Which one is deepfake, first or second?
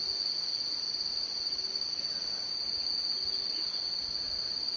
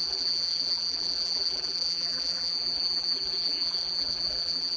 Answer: second